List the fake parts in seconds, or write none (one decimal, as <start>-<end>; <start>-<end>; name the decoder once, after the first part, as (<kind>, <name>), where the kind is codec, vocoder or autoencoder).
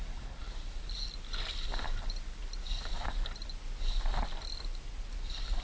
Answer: 4.7-5.6 (vocoder, BigVGAN v2)